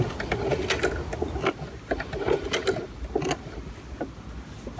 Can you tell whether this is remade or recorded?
recorded